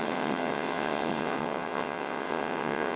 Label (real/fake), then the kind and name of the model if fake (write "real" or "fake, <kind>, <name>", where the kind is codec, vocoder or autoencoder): fake, vocoder, WaveNeXt